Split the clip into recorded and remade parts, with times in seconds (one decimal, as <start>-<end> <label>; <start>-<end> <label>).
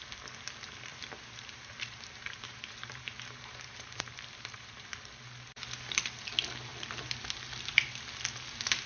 0.0-0.9 recorded; 0.9-4.9 remade; 4.9-8.9 recorded